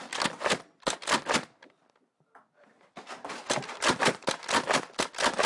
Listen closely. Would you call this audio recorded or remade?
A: recorded